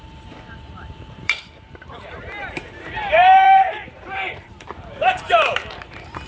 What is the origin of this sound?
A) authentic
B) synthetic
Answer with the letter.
B